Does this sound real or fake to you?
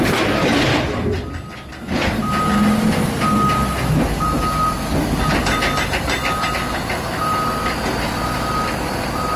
real